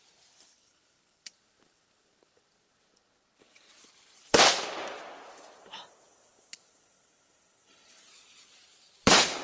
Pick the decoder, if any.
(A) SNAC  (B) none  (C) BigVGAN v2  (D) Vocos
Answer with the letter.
C